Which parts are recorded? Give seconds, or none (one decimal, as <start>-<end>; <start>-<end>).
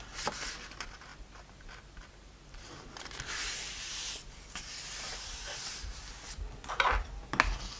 0.0-7.8